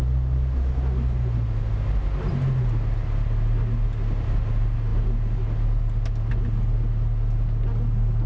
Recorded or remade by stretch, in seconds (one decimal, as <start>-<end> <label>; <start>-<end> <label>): 0.0-8.3 recorded